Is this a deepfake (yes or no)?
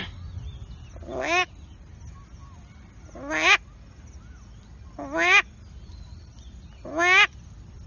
no